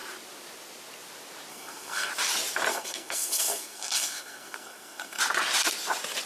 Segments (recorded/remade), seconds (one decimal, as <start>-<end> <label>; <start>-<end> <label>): 0.0-1.5 recorded; 1.5-2.1 remade; 2.1-2.7 recorded; 2.7-5.2 remade; 5.2-6.3 recorded